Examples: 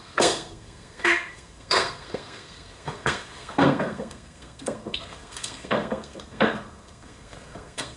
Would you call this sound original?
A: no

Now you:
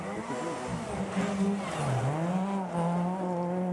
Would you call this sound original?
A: yes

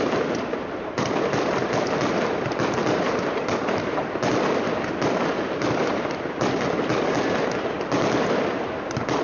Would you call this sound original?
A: yes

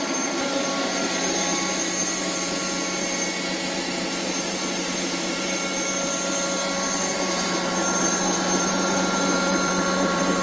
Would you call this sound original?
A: no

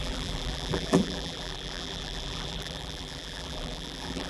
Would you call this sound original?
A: no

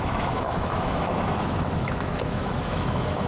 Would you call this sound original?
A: no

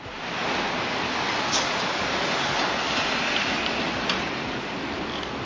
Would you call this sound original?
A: yes